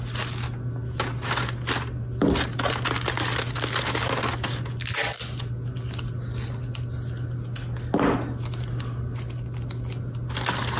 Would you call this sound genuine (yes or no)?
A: yes